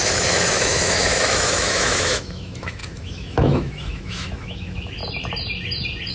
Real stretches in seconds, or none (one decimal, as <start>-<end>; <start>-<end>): 5.0-6.1